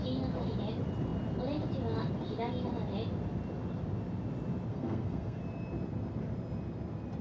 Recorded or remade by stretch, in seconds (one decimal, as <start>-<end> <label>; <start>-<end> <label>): 0.0-4.7 recorded; 4.7-5.4 remade; 5.4-7.2 recorded